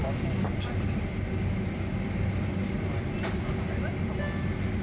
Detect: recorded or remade recorded